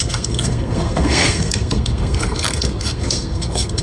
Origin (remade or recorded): remade